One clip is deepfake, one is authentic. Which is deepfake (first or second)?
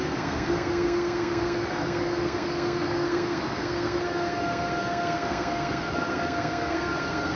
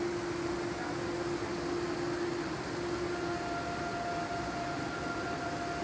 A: first